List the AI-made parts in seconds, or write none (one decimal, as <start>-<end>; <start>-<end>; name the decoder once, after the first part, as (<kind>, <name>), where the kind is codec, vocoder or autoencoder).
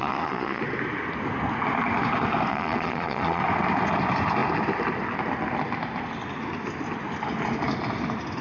0.0-0.6 (vocoder, Vocos); 2.5-3.4